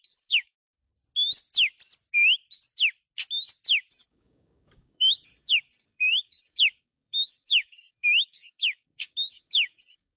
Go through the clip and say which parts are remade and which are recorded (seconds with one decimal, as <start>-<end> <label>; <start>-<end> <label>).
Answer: 0.0-0.9 remade; 0.9-3.9 recorded; 3.9-10.2 remade